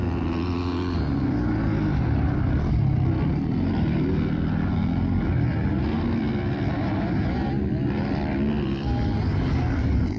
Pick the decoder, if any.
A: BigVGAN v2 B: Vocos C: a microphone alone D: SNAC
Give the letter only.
C